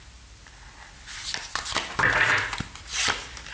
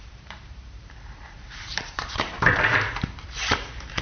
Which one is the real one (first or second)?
first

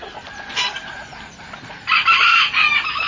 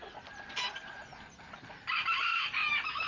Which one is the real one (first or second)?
second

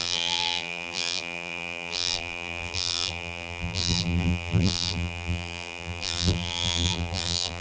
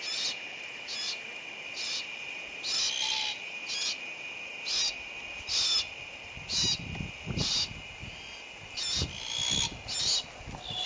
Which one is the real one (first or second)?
second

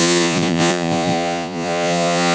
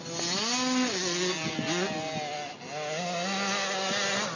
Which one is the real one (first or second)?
second